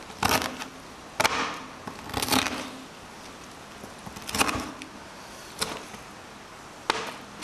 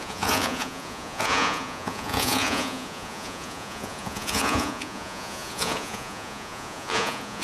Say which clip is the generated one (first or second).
second